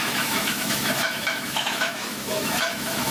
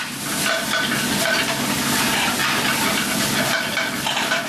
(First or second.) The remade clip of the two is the first